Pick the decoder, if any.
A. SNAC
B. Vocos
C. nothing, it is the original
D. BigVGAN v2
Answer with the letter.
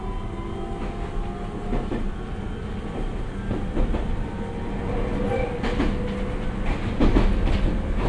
C